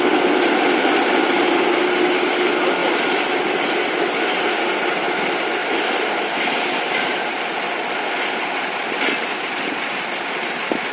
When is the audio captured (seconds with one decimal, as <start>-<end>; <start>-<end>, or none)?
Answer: 0.0-10.9